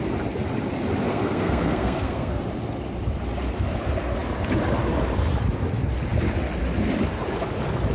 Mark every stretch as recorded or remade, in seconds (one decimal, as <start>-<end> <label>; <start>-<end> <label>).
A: 0.0-1.1 recorded; 1.1-2.4 remade; 2.4-7.9 recorded